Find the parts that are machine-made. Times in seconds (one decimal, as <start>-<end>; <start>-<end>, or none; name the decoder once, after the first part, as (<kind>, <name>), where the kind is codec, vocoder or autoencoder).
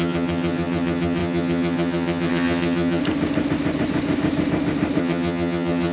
0.0-3.0 (vocoder, HiFi-GAN); 5.0-5.9